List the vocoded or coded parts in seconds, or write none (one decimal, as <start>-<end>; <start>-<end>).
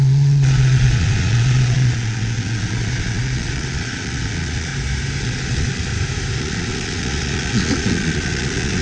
0.0-4.7; 5.2-5.9; 6.4-8.8